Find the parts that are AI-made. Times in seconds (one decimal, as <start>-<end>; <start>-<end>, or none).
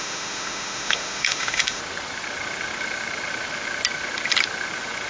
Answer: 0.0-1.8